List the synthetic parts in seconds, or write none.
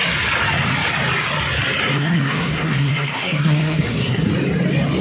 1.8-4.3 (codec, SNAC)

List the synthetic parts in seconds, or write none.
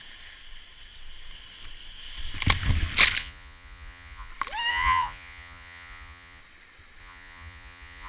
3.2-4.3 (vocoder, Vocos); 4.7-6.4; 7.0-8.1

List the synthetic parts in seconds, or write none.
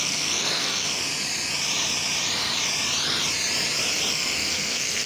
0.0-1.0 (codec, SNAC); 4.1-5.1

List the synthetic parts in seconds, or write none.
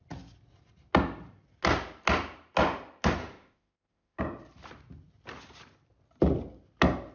3.2-4.2 (autoencoder, DAC-VAE)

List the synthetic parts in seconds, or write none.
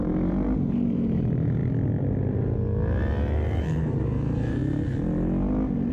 0.0-1.6 (vocoder, BigVGAN v2); 3.6-4.6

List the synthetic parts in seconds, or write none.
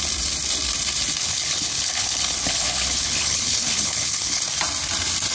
1.2-4.4 (codec, HILCodec)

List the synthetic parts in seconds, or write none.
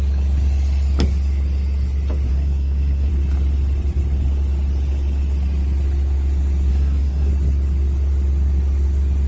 2.3-3.1 (codec, SNAC); 6.7-7.3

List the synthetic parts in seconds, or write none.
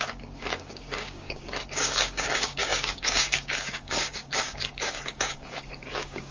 0.0-6.3 (codec, DAC)